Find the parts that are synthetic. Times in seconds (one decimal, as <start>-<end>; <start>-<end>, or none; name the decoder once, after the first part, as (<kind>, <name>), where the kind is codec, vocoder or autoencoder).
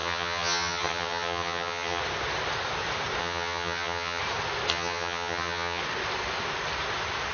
0.0-2.0 (vocoder, HiFi-GAN); 3.2-4.2; 4.7-5.8